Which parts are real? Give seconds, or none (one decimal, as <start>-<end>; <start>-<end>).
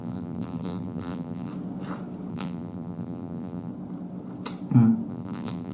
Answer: 1.5-2.3; 3.7-5.1